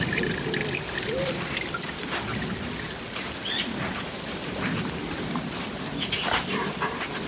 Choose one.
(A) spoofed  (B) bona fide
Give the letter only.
A